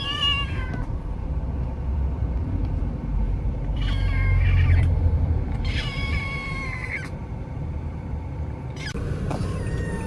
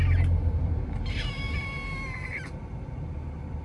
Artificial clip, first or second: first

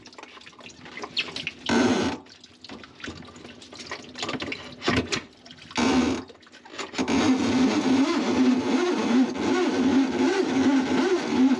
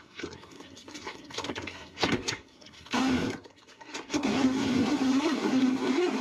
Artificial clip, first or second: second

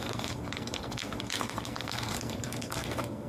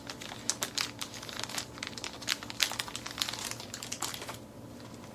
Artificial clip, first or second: first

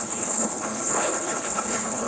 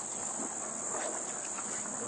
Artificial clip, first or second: first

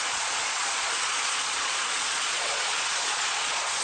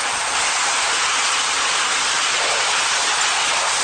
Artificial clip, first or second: first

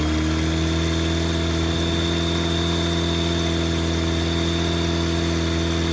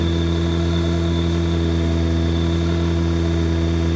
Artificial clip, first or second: second